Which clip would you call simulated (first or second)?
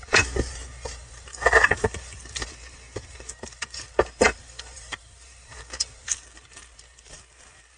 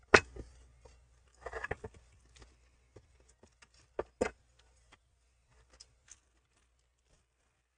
first